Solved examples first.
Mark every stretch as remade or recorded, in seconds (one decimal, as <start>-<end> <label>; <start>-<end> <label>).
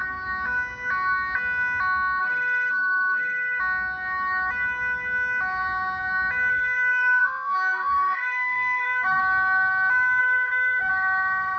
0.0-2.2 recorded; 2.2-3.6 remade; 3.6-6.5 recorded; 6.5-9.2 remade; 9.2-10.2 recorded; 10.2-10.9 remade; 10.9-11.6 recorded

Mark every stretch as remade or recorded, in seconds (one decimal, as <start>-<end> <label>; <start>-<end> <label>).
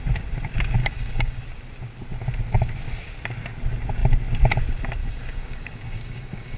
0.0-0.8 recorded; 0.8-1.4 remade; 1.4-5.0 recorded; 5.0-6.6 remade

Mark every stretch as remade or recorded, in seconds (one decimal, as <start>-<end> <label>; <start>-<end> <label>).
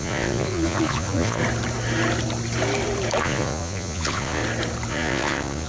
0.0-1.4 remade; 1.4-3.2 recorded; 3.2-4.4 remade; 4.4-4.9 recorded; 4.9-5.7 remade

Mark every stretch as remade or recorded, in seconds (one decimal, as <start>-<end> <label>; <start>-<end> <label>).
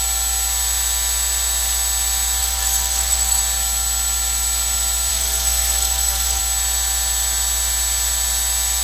0.0-2.4 recorded; 2.4-3.4 remade; 3.4-5.1 recorded; 5.1-6.4 remade; 6.4-8.8 recorded